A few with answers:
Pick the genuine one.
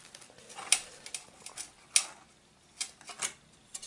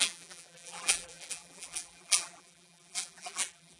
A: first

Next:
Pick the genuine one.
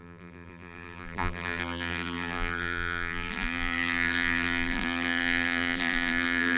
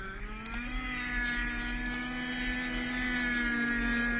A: second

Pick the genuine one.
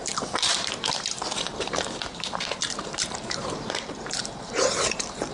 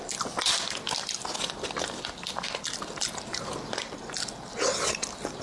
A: second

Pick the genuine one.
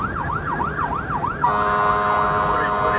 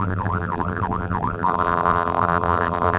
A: first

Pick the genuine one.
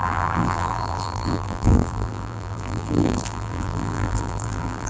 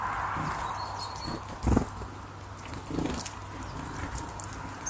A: second